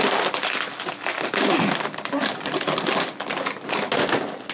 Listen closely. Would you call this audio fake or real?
real